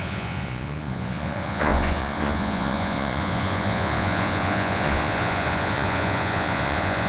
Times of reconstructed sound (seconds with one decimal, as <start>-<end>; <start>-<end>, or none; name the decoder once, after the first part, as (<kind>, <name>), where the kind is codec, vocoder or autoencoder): 0.0-7.1 (vocoder, Vocos)